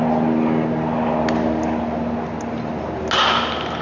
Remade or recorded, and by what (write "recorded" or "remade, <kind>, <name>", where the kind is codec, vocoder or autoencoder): recorded